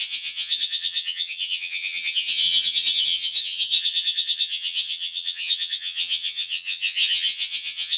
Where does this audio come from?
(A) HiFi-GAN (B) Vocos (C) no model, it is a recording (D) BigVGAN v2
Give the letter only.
A